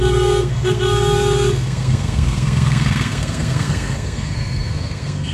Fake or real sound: fake